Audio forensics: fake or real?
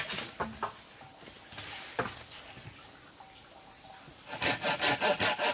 real